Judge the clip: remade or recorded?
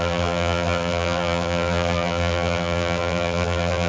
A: remade